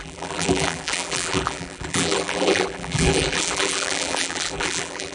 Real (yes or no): no